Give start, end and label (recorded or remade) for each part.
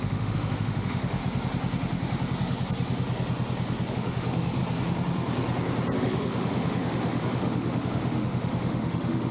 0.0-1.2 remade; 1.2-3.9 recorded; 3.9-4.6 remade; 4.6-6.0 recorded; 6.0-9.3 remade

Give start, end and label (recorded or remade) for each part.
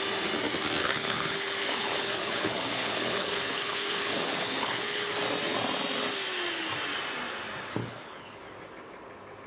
0.0-0.8 recorded; 0.8-5.1 remade; 5.1-7.8 recorded; 7.8-8.4 remade; 8.4-9.5 recorded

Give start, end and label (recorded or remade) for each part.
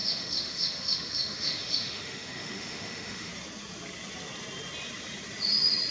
0.0-3.3 remade; 3.3-5.9 recorded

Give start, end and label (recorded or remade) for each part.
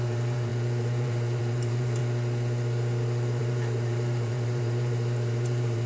0.0-2.0 remade; 2.0-3.4 recorded; 3.4-5.9 remade